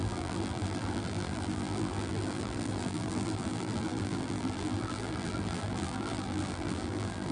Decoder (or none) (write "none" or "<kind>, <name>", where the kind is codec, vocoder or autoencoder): vocoder, BigVGAN v2